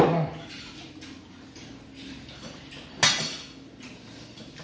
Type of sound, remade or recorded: recorded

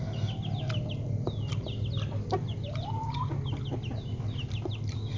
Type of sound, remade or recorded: recorded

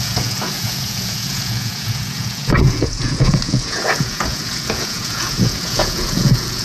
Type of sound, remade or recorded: remade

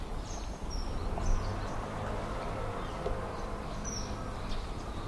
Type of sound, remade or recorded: recorded